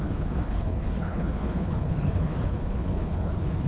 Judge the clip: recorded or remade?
remade